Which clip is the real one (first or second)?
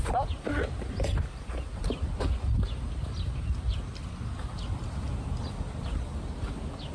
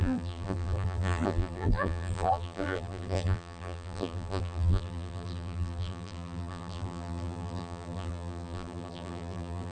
first